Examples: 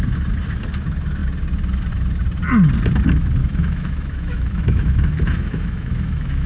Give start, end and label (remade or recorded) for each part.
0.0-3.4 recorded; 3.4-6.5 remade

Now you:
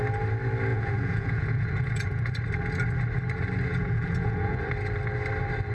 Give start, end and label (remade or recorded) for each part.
0.0-0.7 recorded; 0.7-2.3 remade; 2.3-3.7 recorded; 3.7-4.6 remade; 4.6-5.7 recorded

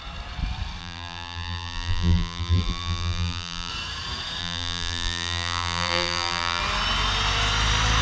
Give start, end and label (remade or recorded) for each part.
0.0-0.8 recorded; 0.8-3.7 remade; 3.7-4.4 recorded; 4.4-6.6 remade; 6.6-8.0 recorded

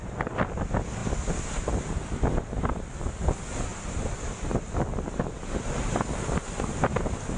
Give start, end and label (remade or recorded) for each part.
0.0-7.4 recorded

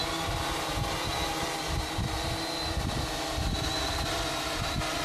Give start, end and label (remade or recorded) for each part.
0.0-5.0 recorded

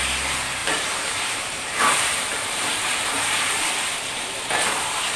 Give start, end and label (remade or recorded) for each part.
0.0-0.6 recorded; 0.6-3.7 remade; 3.7-5.2 recorded

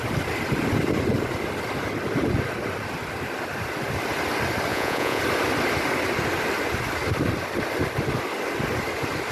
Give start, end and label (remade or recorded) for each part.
0.0-4.7 recorded; 4.7-5.2 remade; 5.2-9.3 recorded

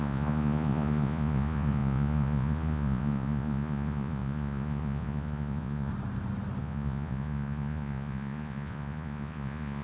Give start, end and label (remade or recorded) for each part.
0.0-5.9 remade; 5.9-6.6 recorded; 6.6-9.8 remade